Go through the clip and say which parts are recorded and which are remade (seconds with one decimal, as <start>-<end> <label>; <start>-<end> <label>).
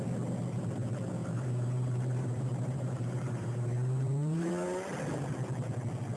0.0-1.2 recorded; 1.2-4.5 remade; 4.5-6.2 recorded